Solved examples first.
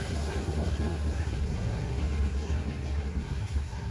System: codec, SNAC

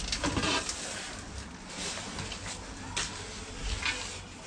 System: none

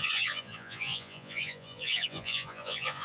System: vocoder, Vocos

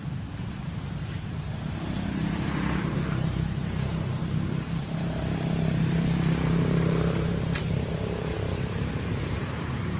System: vocoder, BigVGAN v2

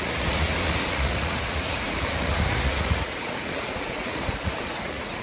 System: vocoder, Vocos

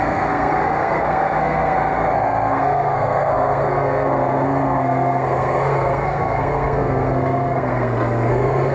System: codec, SNAC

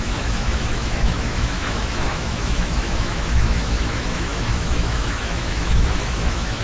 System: autoencoder, DAC-VAE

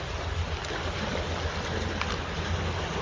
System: none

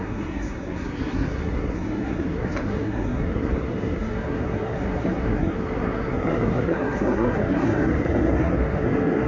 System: codec, SNAC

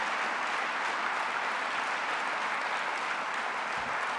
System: none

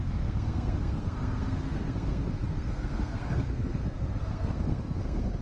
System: codec, SNAC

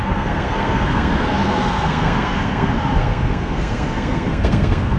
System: codec, SNAC